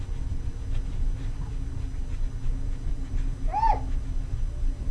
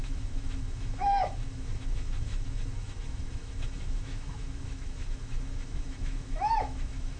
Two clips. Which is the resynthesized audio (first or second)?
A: second